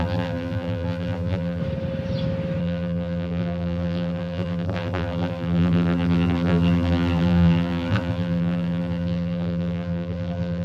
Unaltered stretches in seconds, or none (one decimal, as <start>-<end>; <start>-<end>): 1.6-2.6